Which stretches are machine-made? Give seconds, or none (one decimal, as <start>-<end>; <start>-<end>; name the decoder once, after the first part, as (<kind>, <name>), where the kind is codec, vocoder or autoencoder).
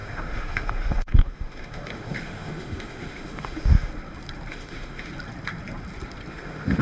0.0-3.9 (autoencoder, DAC-VAE); 4.5-5.1; 6.3-6.8